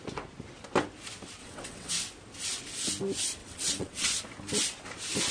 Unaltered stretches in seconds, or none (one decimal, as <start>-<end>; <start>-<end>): 0.0-1.4; 1.9-3.4; 4.2-5.3